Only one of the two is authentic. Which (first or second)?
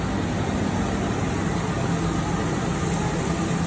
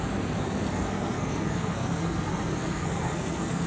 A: first